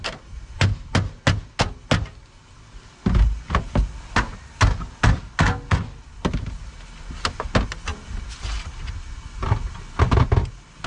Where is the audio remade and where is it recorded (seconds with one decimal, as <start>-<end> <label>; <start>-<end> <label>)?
0.0-10.9 recorded